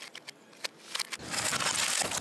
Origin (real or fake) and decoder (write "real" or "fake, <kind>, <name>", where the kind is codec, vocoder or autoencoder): real